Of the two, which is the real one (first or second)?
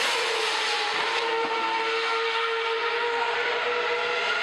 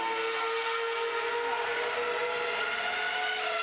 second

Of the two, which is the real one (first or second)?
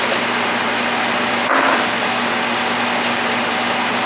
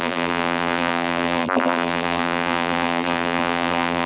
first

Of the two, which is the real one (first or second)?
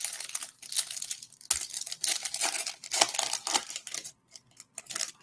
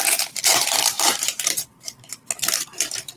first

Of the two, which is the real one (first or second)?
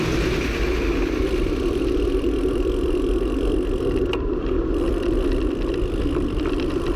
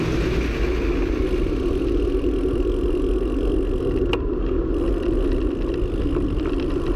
second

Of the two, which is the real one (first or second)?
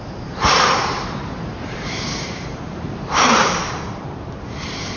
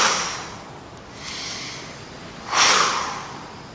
second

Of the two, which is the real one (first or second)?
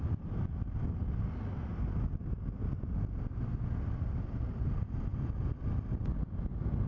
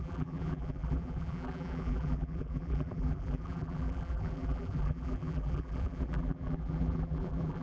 first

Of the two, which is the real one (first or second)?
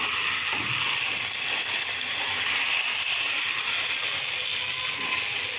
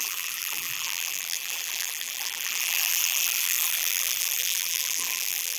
first